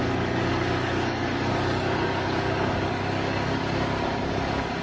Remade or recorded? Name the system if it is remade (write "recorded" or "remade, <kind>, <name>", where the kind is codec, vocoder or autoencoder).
remade, codec, DAC